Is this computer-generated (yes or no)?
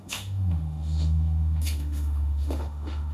yes